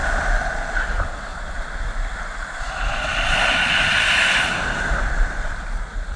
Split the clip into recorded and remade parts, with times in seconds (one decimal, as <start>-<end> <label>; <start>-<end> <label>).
0.0-0.7 recorded; 0.7-1.3 remade; 1.3-4.6 recorded; 4.6-6.2 remade